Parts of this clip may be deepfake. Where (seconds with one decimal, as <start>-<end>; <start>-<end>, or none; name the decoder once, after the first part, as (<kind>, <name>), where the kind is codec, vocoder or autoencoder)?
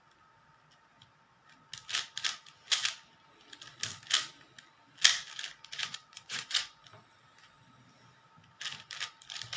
5.8-6.8 (vocoder, Vocos)